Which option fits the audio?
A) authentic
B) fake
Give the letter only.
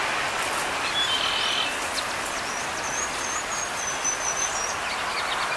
A